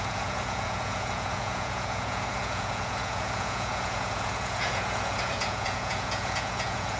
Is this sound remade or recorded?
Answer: remade